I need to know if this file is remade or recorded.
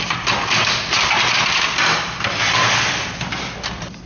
recorded